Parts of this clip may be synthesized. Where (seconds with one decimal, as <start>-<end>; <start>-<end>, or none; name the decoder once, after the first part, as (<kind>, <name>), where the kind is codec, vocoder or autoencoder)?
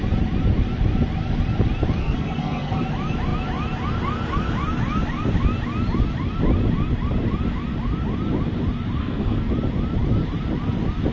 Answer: 2.0-2.8 (codec, SNAC); 9.0-9.5